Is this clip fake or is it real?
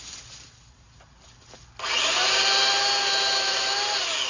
real